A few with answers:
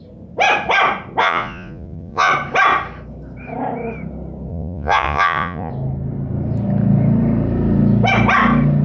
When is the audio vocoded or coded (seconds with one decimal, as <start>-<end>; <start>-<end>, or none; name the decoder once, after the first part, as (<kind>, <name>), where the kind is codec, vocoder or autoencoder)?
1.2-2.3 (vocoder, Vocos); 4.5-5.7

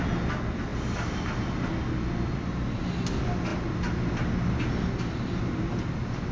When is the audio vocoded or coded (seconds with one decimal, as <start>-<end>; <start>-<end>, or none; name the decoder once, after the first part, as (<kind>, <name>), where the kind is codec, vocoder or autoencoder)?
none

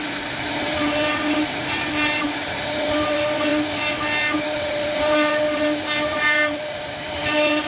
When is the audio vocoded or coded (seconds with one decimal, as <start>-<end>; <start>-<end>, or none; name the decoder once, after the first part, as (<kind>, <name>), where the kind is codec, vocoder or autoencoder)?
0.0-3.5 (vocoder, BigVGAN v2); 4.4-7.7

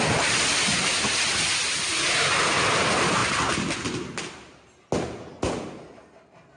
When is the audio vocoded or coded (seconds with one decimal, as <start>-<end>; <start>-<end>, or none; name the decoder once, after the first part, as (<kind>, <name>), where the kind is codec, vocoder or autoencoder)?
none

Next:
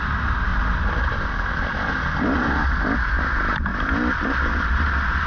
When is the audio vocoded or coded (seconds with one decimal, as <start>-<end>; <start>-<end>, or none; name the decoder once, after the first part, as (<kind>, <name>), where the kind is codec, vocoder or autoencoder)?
0.5-1.9 (vocoder, BigVGAN v2); 3.7-4.4